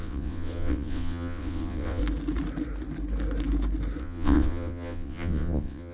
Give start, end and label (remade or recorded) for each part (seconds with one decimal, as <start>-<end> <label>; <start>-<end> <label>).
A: 0.0-2.0 remade; 2.0-4.0 recorded; 4.0-5.9 remade